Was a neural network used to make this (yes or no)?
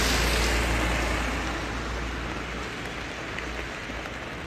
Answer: no